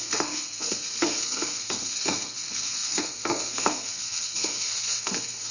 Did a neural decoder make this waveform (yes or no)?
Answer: yes